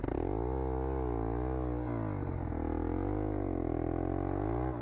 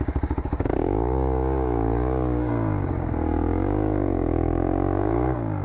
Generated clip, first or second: second